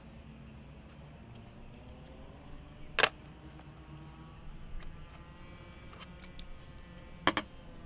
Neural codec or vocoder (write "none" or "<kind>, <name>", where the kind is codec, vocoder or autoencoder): none